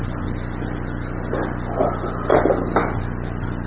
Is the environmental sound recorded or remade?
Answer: recorded